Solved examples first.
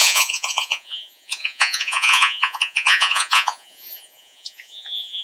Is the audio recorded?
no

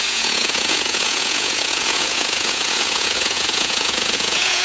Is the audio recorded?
no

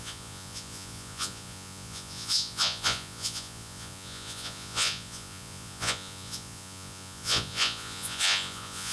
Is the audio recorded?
no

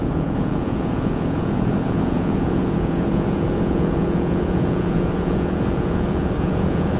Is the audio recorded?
no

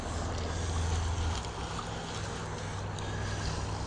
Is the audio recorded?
yes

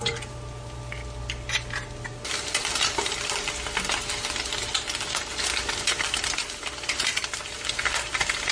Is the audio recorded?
yes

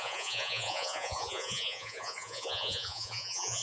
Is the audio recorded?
no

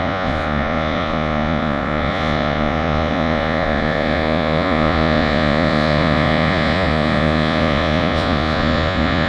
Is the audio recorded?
no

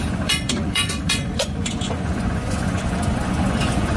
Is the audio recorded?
no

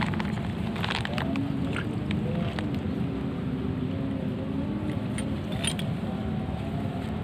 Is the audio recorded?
yes